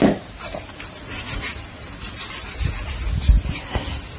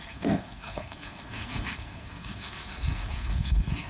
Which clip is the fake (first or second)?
second